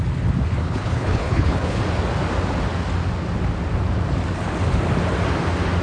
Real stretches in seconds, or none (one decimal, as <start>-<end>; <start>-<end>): 0.0-0.6; 1.8-5.8